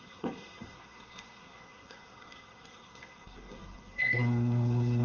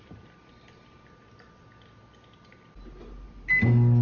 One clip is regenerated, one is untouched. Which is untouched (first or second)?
second